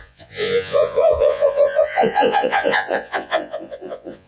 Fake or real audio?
fake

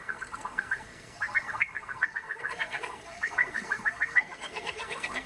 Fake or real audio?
fake